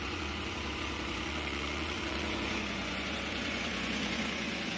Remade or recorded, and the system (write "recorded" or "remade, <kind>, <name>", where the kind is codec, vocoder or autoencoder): remade, vocoder, Vocos